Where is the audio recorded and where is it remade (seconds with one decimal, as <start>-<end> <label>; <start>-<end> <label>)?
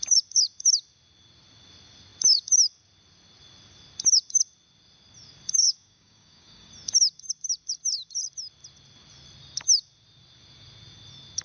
0.0-5.6 recorded; 5.6-6.7 remade; 6.7-11.4 recorded